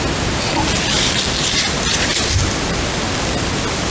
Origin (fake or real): real